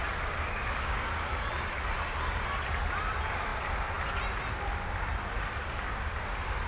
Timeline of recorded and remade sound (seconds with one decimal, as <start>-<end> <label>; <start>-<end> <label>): 0.0-6.7 recorded